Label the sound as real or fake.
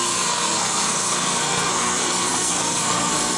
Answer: fake